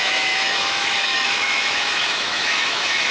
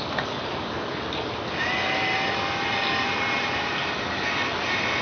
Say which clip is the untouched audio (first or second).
second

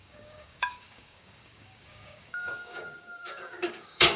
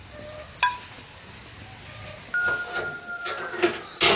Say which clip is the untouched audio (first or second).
second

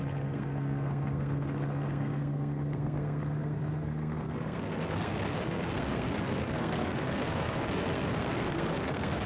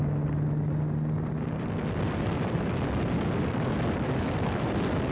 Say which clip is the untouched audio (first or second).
second